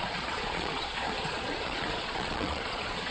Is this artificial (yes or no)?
yes